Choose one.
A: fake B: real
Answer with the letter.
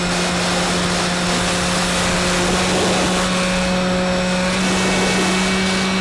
B